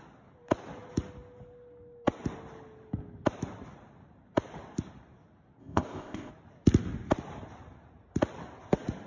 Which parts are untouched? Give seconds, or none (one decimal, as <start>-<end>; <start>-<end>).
0.0-5.6; 6.3-9.1